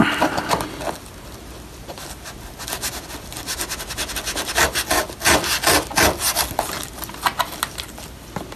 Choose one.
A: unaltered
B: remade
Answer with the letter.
A